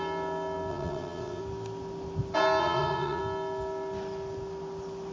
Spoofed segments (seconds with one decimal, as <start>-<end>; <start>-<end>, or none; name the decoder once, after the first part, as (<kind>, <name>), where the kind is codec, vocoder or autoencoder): 0.7-1.4 (vocoder, WaveNeXt); 2.6-3.2